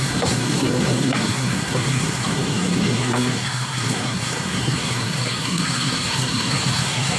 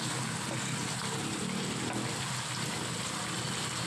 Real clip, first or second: second